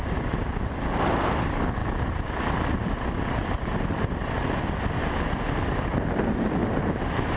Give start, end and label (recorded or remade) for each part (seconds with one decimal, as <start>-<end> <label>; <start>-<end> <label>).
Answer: 0.0-1.8 recorded; 1.8-4.6 remade; 4.6-6.6 recorded; 6.6-7.4 remade